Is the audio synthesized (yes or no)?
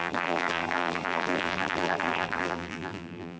yes